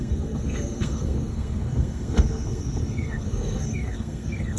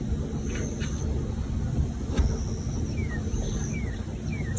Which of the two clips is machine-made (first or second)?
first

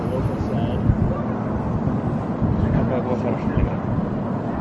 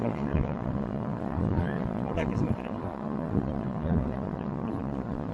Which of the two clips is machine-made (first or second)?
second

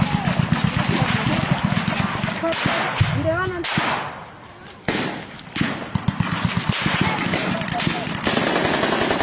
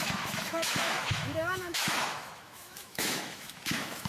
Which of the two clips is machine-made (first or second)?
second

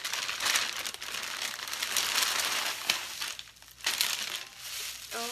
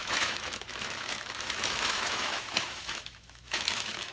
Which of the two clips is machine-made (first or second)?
second